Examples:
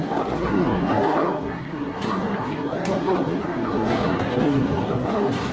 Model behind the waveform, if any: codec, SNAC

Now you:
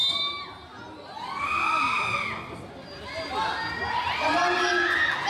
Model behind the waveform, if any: none